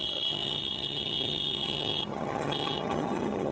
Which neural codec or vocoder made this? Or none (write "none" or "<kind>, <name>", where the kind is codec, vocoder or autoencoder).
vocoder, HiFi-GAN